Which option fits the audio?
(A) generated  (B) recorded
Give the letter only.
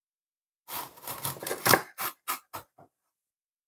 B